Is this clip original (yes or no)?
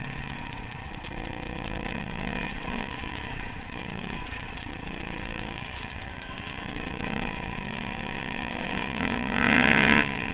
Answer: no